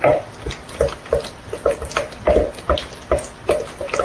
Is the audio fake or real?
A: real